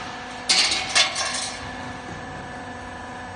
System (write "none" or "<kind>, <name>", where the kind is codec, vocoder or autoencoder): none